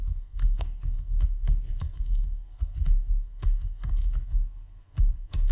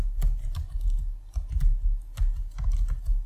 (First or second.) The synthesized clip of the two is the first